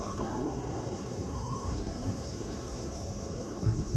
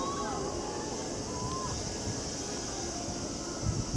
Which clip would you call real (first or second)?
second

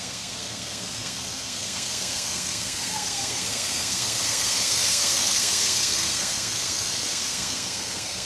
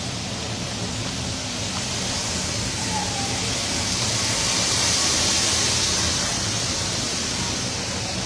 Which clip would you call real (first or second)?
second